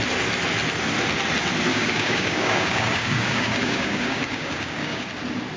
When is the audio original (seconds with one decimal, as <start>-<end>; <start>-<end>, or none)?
0.0-1.7; 5.1-5.6